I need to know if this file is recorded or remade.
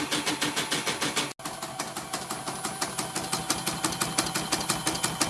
recorded